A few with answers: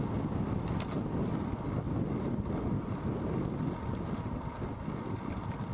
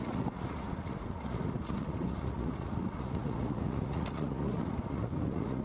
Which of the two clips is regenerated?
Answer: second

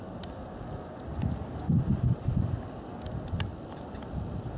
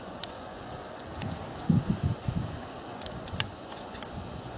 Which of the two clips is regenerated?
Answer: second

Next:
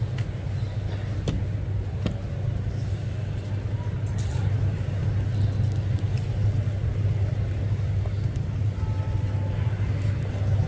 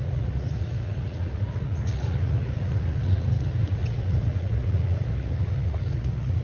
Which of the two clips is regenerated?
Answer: second